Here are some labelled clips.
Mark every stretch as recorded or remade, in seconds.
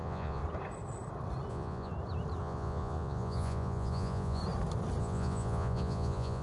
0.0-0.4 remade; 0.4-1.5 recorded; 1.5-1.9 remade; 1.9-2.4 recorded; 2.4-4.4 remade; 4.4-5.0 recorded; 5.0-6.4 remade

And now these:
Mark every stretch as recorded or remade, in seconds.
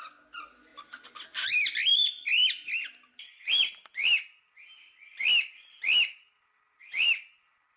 0.0-7.8 recorded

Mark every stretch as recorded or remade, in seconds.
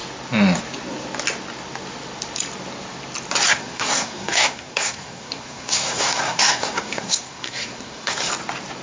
0.0-3.5 recorded; 3.5-8.3 remade; 8.3-8.8 recorded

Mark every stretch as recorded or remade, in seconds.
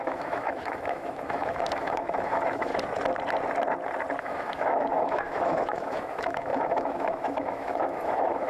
0.0-2.7 remade; 2.7-4.2 recorded; 4.2-8.5 remade